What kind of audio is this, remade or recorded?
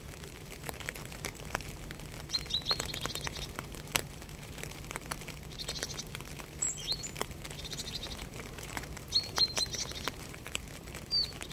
remade